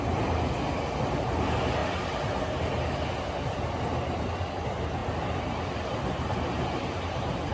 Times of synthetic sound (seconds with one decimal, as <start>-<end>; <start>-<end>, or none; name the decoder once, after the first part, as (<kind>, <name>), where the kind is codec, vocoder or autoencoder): 5.0-7.5 (vocoder, BigVGAN v2)